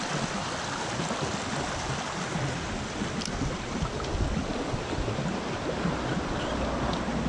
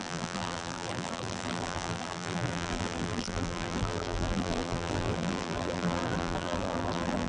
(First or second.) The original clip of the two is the first